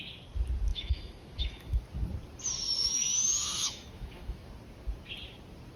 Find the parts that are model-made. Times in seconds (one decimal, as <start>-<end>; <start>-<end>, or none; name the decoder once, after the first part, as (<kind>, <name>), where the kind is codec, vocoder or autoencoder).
0.7-1.8 (autoencoder, DAC-VAE); 2.8-4.5